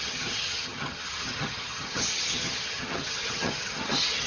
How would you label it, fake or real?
fake